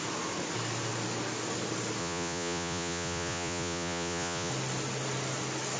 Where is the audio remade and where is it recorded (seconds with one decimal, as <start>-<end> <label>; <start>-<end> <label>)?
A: 0.0-2.0 recorded; 2.0-4.5 remade; 4.5-5.8 recorded